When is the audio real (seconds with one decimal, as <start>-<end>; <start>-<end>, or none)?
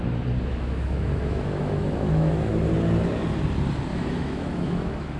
0.0-0.5; 2.5-3.9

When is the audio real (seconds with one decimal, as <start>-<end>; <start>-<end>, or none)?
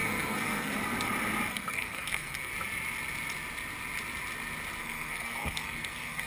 0.7-1.5; 2.5-4.8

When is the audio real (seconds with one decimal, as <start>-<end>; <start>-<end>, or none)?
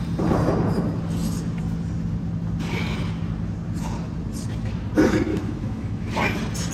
0.0-5.3; 6.1-6.7